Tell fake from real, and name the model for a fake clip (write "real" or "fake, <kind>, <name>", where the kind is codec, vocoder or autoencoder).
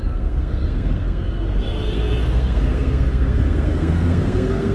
fake, codec, SNAC